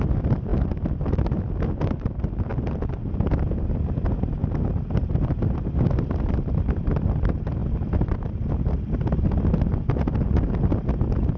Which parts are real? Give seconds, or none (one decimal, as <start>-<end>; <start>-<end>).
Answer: 0.0-11.4